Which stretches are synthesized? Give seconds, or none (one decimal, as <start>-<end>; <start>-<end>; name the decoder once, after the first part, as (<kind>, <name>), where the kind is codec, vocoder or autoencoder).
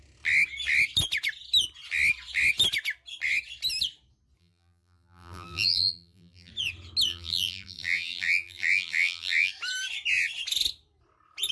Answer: 4.4-6.5 (vocoder, BigVGAN v2); 7.1-9.5